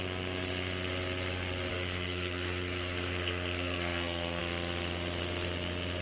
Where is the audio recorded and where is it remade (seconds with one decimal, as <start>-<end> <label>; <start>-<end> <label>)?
0.0-1.7 recorded; 1.7-4.4 remade; 4.4-6.0 recorded

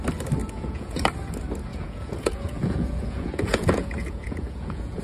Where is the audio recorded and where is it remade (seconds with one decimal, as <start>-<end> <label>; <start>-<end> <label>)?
0.0-0.4 recorded; 0.4-1.0 remade; 1.0-1.7 recorded; 1.7-5.0 remade

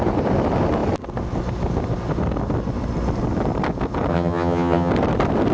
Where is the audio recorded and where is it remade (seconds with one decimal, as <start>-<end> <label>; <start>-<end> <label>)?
0.0-4.1 recorded; 4.1-4.9 remade; 4.9-5.5 recorded

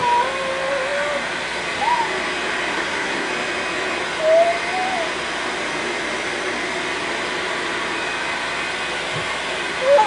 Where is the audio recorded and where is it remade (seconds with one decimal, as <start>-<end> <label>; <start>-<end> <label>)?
0.0-2.7 recorded; 2.7-3.3 remade; 3.3-10.1 recorded

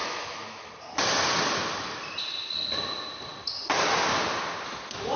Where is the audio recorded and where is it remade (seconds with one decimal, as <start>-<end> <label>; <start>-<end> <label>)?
0.0-0.7 remade; 0.7-5.2 recorded

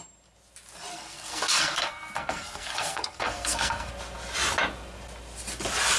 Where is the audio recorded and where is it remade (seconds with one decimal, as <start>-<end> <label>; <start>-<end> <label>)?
0.0-0.9 recorded; 0.9-3.9 remade; 3.9-6.0 recorded

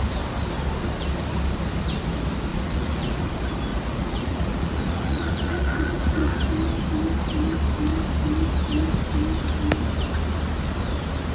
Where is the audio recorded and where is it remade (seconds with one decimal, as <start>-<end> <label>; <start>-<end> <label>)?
0.0-2.5 recorded; 2.5-3.3 remade; 3.3-3.7 recorded; 3.7-6.4 remade; 6.4-11.3 recorded

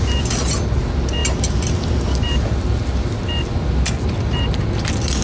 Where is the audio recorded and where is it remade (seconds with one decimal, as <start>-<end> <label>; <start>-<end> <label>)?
0.0-5.2 recorded